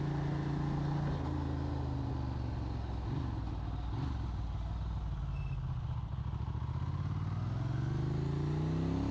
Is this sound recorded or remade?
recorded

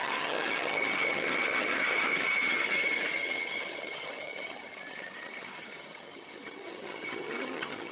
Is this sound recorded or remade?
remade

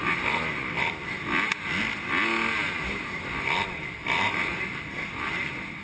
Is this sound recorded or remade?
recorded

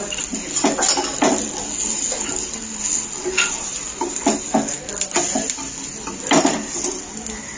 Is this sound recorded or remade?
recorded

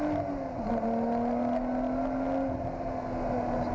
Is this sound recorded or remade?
recorded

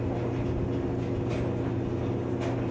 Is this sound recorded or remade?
recorded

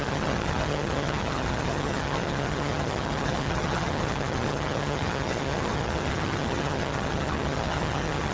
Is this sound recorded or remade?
remade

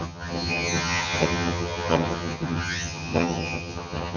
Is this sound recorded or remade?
remade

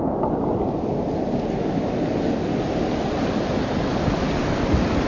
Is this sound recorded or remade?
recorded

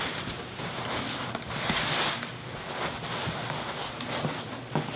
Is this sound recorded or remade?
recorded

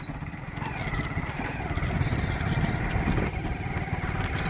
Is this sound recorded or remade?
recorded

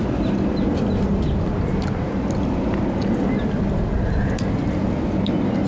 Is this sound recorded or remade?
recorded